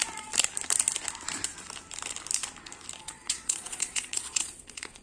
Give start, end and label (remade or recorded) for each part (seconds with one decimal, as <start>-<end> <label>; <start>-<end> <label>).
0.0-3.0 recorded; 3.0-5.0 remade